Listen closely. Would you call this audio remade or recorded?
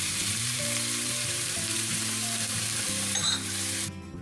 remade